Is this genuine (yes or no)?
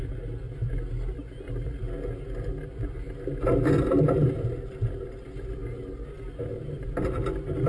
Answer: yes